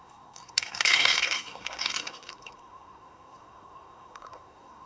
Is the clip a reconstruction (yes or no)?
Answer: yes